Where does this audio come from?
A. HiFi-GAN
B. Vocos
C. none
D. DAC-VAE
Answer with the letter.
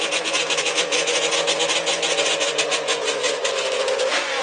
B